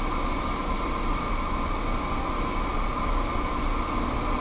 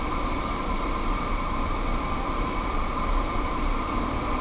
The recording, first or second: first